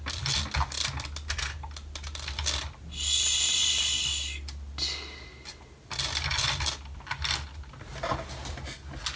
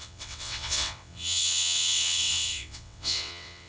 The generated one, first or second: second